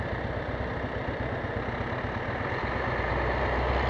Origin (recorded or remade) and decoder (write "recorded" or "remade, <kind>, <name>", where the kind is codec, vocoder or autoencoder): recorded